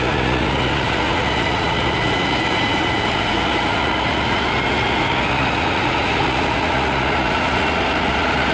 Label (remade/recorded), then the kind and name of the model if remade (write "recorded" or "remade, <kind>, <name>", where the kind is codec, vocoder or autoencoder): remade, vocoder, Vocos